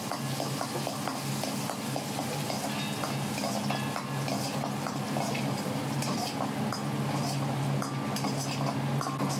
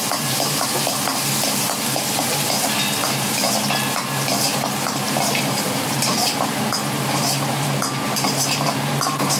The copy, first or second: second